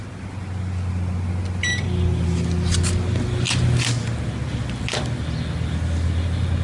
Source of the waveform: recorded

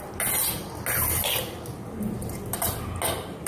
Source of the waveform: recorded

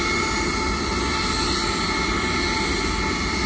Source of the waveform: recorded